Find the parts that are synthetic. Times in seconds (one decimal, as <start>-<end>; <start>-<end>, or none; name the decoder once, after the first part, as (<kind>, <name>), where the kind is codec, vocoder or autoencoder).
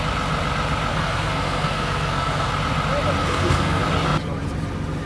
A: 0.9-2.5 (codec, SNAC); 3.2-3.8